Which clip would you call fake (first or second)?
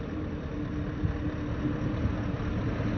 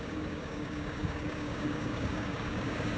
second